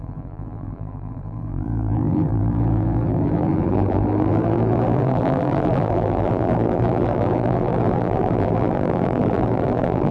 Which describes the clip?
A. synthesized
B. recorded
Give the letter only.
A